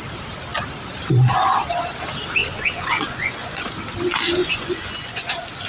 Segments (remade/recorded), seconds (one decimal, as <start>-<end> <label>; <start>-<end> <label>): 0.0-2.4 recorded; 2.4-3.7 remade; 3.7-4.4 recorded; 4.4-5.3 remade; 5.3-5.7 recorded